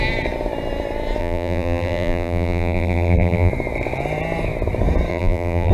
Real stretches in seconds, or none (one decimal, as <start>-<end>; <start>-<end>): 0.0-1.2; 3.5-5.1